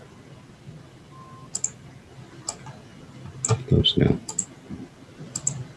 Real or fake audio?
real